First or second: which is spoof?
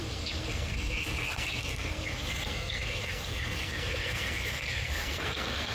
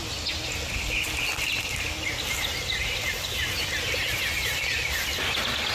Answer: first